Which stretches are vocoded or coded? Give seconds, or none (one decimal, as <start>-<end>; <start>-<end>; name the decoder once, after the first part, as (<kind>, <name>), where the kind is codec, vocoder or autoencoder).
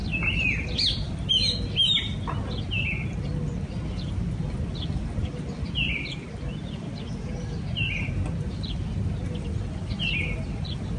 none